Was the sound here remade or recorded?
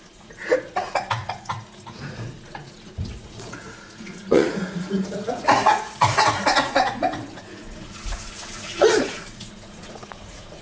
remade